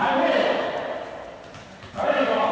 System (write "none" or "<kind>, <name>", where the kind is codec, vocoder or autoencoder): none